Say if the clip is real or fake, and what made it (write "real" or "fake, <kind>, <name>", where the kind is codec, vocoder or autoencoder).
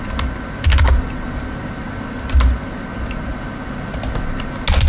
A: real